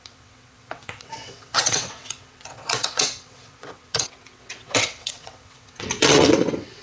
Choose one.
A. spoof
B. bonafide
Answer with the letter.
A